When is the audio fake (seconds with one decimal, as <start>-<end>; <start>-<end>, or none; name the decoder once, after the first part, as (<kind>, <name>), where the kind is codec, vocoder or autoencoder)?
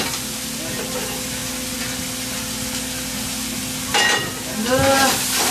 none